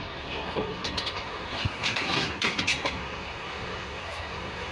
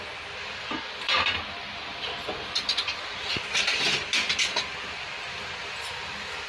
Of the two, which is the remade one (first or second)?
first